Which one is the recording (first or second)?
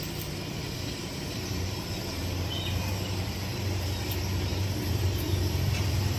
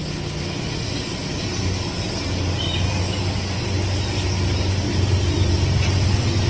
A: second